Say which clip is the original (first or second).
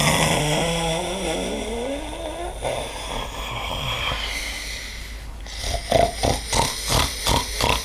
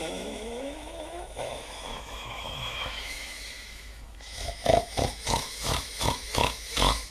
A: first